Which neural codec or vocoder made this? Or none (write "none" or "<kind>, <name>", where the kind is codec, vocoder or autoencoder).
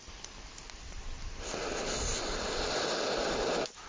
none